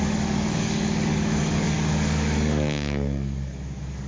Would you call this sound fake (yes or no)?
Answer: yes